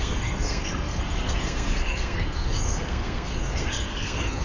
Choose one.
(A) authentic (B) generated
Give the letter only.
B